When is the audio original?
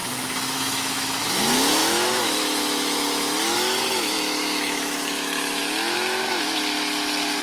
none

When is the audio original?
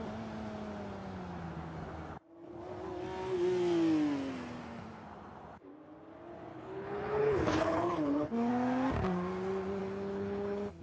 0.0-6.5; 8.5-9.8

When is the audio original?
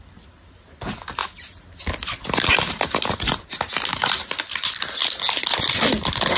0.0-6.4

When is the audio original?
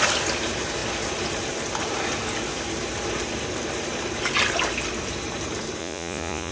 0.0-5.8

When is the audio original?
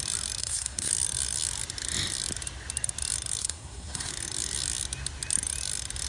0.0-0.4; 0.9-3.4; 4.1-6.1